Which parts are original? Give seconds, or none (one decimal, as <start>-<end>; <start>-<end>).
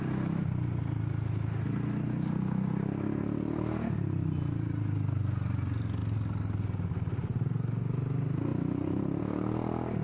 0.0-10.0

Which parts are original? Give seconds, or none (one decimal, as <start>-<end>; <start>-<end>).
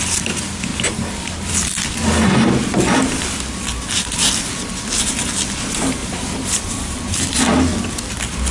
0.0-8.5